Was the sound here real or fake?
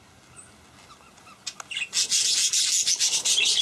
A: real